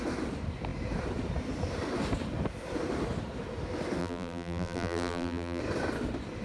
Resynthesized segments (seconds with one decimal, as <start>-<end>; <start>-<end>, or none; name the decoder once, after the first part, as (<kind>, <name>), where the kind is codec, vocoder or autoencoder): 4.0-5.6 (vocoder, BigVGAN v2)